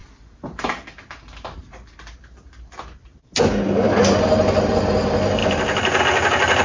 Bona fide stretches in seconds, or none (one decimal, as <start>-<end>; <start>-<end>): 0.0-6.6